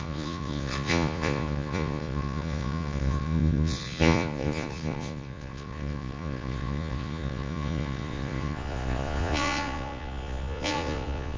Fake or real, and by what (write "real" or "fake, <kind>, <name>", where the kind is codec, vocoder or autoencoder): fake, vocoder, Vocos